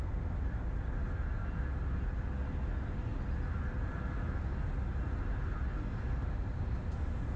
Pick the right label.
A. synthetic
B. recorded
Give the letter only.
B